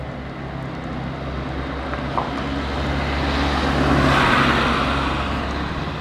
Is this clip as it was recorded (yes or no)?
yes